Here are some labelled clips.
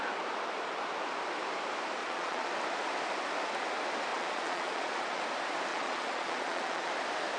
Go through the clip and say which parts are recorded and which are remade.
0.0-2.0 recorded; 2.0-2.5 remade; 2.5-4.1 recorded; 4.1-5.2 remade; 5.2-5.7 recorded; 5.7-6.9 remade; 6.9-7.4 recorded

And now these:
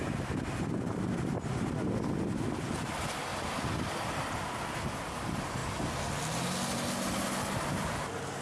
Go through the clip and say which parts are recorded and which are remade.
0.0-8.4 recorded

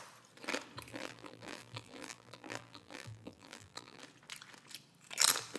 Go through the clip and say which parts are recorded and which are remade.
0.0-0.9 recorded; 0.9-4.0 remade; 4.0-5.6 recorded

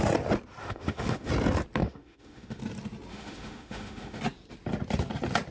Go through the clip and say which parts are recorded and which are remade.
0.0-0.6 recorded; 0.6-1.3 remade; 1.3-1.8 recorded; 1.8-2.6 remade; 2.6-3.1 recorded; 3.1-4.2 remade; 4.2-5.5 recorded

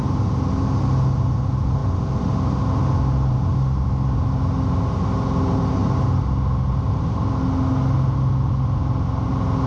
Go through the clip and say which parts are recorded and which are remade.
0.0-9.7 recorded

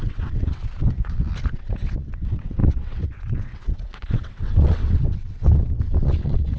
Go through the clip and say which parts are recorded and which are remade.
0.0-0.6 remade; 0.6-1.5 recorded; 1.5-6.6 remade

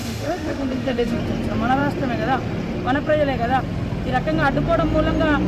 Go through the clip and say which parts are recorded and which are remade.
0.0-1.2 remade; 1.2-5.5 recorded

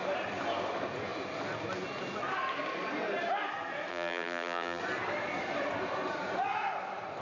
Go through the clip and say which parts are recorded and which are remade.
0.0-3.9 recorded; 3.9-4.8 remade; 4.8-7.2 recorded